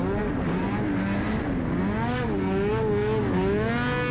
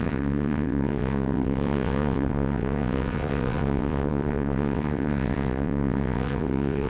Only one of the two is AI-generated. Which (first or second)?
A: second